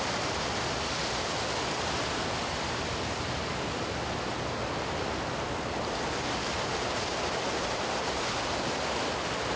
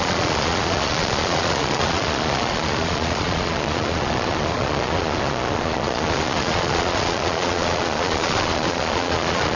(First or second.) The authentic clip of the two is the first